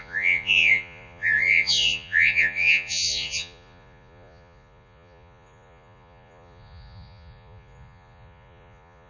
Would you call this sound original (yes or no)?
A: no